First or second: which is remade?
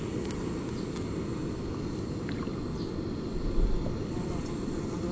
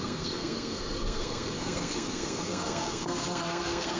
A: second